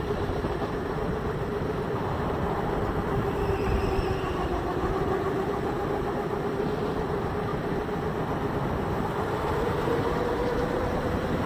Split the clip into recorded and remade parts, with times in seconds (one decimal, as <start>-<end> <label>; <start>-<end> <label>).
0.0-7.5 remade; 7.5-8.6 recorded; 8.6-11.5 remade